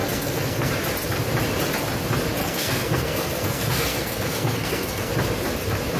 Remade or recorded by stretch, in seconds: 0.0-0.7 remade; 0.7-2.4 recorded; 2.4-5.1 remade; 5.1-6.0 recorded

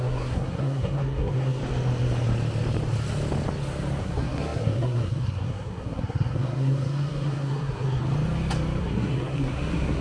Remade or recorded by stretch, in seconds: 0.0-1.6 remade; 1.6-4.0 recorded; 4.0-8.0 remade; 8.0-8.8 recorded; 8.8-10.0 remade

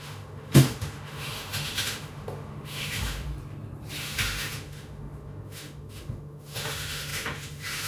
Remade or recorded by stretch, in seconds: 0.0-3.3 remade; 3.3-4.0 recorded; 4.0-7.9 remade

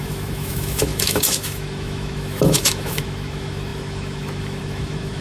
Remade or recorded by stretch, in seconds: 0.0-5.2 remade